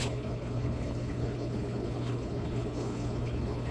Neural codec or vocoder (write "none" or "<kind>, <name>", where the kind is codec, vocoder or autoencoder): codec, HILCodec